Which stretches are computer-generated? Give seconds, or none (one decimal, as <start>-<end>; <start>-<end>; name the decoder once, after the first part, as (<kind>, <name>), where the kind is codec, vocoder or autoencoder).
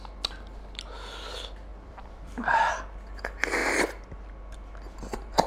1.7-2.7 (vocoder, BigVGAN v2)